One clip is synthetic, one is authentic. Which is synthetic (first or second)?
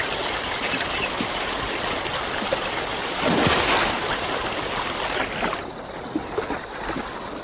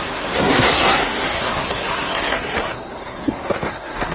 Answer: second